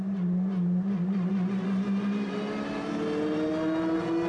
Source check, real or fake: real